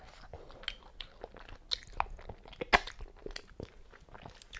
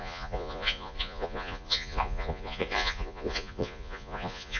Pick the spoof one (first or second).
second